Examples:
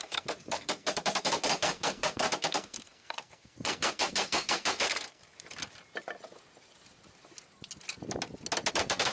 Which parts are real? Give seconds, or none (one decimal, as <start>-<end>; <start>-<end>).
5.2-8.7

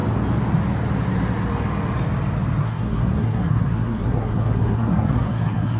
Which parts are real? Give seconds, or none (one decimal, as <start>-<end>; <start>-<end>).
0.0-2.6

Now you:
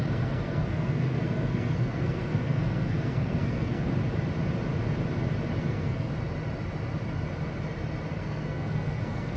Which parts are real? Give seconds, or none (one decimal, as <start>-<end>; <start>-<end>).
3.9-5.6; 6.1-8.1

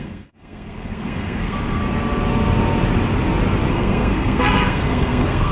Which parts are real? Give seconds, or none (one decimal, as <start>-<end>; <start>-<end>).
1.8-3.7